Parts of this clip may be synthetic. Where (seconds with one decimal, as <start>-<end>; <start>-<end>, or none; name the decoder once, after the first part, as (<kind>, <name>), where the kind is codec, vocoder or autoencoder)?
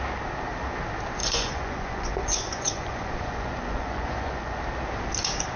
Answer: 1.2-4.6 (vocoder, Vocos)